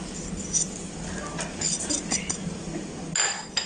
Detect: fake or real real